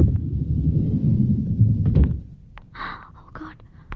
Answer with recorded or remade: recorded